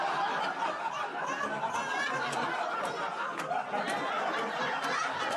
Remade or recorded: recorded